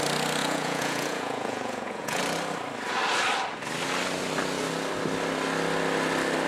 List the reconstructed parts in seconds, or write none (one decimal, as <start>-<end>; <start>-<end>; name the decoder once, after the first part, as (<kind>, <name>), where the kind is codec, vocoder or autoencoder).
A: 0.4-2.2 (vocoder, Vocos)